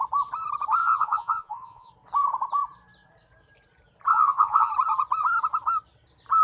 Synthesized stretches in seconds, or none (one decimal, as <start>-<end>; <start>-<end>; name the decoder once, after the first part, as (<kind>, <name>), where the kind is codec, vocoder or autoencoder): 0.8-1.9 (vocoder, Vocos); 4.1-4.7